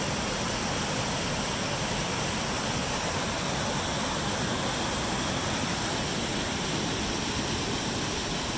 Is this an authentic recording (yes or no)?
yes